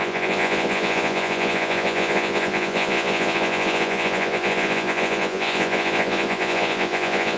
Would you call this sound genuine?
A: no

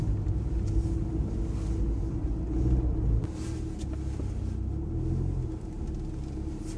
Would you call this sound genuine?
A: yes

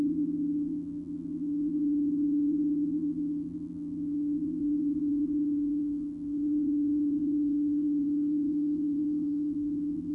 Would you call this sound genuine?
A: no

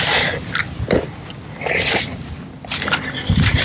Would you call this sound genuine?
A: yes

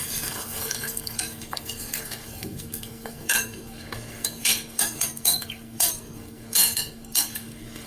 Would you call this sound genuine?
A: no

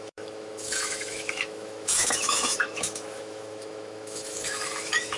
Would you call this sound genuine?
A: no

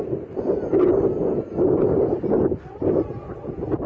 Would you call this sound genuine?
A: yes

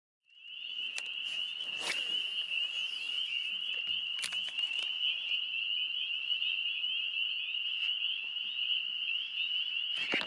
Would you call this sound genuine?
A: yes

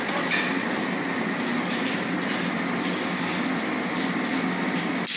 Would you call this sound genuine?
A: yes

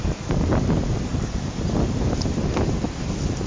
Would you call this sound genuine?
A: yes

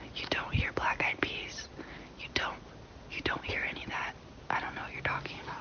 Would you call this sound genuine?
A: yes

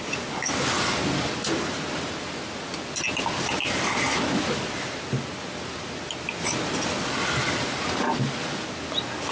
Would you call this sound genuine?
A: yes